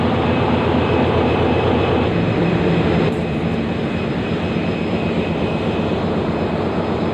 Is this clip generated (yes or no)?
yes